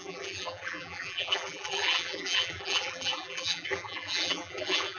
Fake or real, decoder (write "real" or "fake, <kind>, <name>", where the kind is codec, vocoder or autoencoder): fake, vocoder, BigVGAN v2